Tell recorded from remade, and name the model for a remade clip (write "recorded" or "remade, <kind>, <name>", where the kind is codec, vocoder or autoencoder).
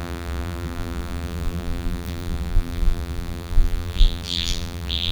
remade, vocoder, BigVGAN v2